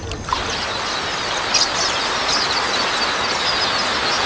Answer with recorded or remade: recorded